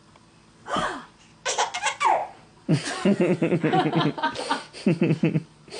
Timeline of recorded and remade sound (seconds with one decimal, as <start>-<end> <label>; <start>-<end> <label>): 0.0-1.2 remade; 1.2-5.8 recorded